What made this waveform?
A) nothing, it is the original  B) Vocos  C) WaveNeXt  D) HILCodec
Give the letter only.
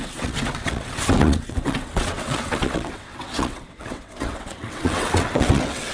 C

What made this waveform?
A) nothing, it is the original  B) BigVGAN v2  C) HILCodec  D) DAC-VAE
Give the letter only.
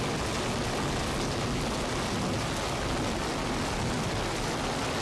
A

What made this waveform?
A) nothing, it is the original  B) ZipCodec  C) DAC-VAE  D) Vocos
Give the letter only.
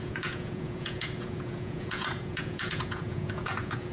D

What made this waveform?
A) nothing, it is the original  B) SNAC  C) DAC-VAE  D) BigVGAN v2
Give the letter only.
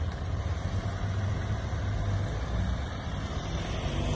A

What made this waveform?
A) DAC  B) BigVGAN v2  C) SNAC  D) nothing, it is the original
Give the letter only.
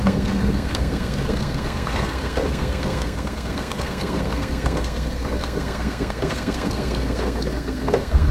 C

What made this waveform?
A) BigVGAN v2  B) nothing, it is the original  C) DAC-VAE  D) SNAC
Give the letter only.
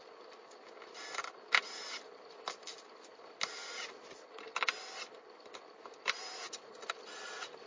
B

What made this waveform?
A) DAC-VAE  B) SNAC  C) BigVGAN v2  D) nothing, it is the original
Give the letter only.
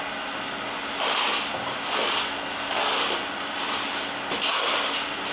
D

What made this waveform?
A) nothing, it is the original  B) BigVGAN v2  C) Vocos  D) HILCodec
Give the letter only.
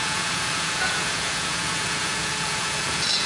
C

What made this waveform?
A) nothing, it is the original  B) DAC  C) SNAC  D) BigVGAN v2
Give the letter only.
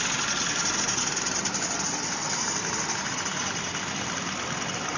A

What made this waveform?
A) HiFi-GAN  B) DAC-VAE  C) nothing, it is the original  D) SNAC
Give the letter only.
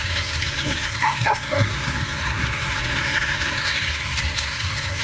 D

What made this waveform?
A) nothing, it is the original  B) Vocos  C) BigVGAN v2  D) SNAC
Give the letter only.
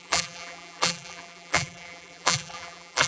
C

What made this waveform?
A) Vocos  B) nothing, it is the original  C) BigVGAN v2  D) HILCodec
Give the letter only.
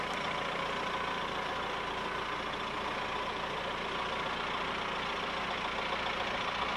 B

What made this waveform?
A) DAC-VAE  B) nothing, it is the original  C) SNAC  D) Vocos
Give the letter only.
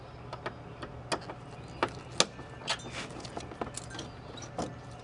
B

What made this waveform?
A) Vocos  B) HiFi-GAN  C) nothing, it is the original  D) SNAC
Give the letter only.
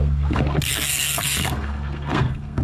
D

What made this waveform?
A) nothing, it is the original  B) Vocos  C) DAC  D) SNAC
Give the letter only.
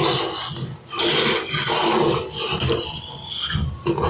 A